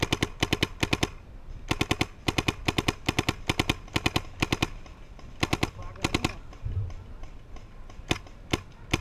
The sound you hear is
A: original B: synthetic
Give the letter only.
A